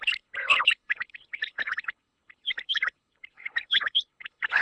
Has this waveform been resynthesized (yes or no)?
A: yes